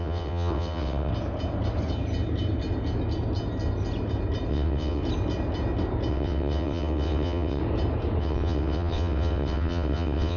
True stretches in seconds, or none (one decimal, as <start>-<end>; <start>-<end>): 1.1-4.5; 5.0-6.1; 7.6-8.2